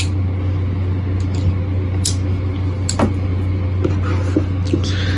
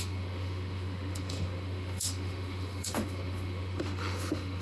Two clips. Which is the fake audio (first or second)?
second